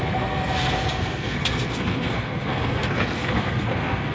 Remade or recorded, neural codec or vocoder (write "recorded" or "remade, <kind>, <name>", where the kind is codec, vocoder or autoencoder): remade, codec, SNAC